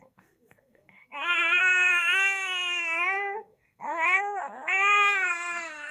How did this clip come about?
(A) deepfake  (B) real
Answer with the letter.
A